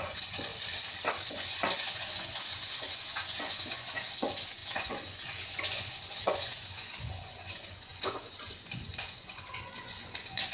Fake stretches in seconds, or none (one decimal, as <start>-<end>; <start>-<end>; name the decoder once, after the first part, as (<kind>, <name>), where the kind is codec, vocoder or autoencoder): 0.0-0.5 (vocoder, Vocos); 1.3-10.5